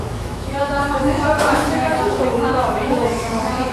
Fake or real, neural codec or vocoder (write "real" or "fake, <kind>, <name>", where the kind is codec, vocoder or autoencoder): fake, autoencoder, DAC-VAE